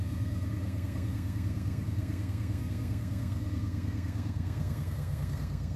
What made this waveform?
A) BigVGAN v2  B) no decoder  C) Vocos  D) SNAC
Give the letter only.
D